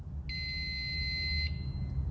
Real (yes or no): yes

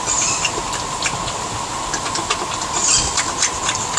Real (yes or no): yes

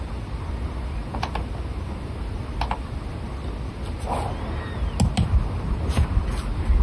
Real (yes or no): yes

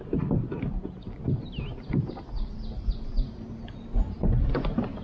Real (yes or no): yes